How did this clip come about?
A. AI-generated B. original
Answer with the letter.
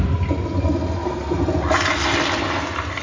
B